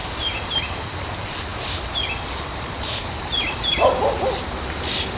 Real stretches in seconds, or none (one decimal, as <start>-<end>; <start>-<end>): 0.0-5.2